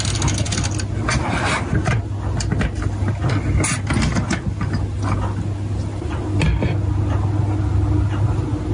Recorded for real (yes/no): yes